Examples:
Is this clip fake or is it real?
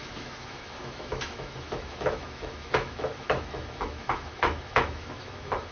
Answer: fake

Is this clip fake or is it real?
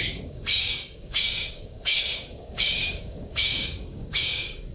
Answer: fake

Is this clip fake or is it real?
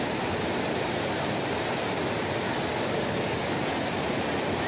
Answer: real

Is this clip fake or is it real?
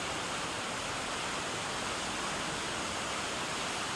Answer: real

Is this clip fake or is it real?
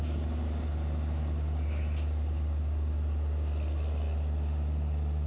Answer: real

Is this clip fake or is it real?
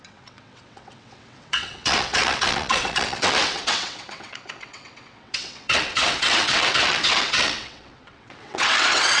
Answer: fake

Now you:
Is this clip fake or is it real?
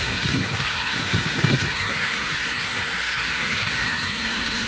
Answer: fake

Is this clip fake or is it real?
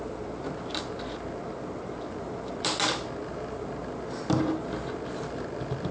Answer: real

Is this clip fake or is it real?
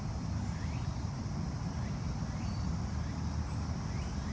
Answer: real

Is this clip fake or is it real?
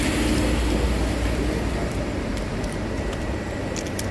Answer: real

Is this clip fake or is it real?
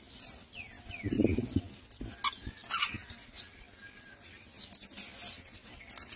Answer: real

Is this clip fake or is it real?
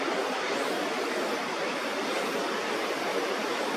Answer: real